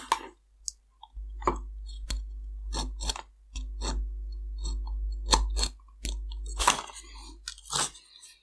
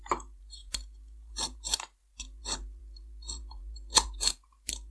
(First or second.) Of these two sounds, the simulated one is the second